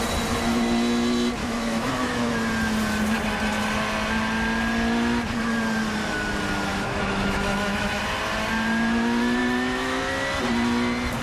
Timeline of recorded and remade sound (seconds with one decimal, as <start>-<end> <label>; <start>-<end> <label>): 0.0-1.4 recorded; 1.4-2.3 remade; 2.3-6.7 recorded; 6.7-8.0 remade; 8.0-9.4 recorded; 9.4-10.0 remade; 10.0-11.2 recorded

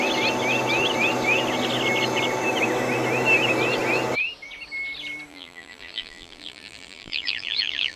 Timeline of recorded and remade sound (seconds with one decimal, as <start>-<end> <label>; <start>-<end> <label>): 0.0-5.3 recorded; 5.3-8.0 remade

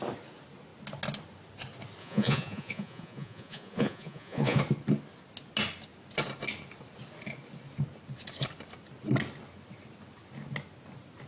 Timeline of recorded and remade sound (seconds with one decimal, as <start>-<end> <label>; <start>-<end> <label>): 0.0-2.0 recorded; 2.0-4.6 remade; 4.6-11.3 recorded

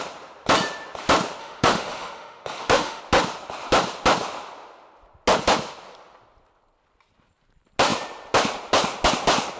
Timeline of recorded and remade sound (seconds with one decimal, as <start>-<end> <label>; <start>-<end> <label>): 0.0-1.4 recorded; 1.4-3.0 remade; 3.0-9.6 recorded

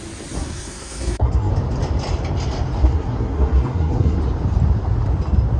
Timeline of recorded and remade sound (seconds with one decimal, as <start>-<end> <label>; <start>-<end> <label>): 0.0-0.4 recorded; 0.4-1.5 remade; 1.5-2.8 recorded; 2.8-4.2 remade; 4.2-5.6 recorded